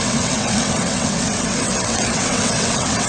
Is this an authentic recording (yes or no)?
no